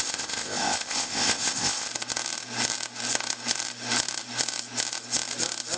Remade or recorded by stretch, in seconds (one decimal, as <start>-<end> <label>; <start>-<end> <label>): 0.0-1.9 remade; 1.9-5.8 recorded